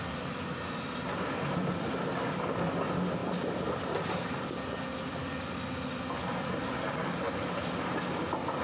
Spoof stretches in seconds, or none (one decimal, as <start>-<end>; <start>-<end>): none